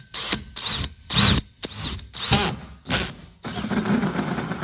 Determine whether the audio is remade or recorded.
recorded